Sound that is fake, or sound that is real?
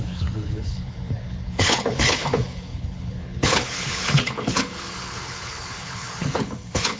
fake